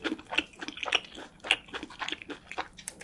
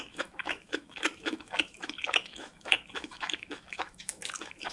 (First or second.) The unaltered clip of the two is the first